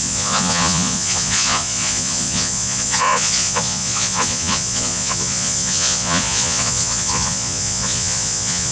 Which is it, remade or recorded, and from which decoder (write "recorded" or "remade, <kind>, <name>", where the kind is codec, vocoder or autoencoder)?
remade, vocoder, Vocos